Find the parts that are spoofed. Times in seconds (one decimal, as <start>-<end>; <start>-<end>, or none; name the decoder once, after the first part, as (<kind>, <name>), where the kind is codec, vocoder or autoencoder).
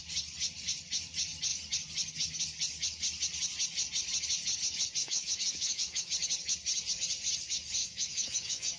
5.0-6.1 (autoencoder, DAC-VAE); 7.8-8.8